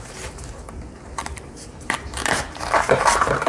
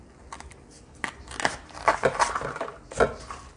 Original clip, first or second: second